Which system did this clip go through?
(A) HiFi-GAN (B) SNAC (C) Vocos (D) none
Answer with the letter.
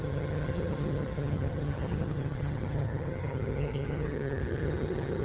A